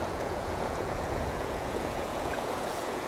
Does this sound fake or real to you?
fake